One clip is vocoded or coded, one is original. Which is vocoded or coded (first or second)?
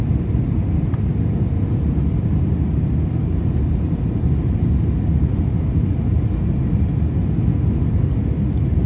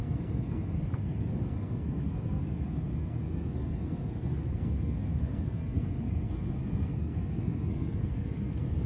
second